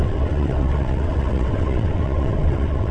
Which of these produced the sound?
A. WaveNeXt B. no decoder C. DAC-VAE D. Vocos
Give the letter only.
A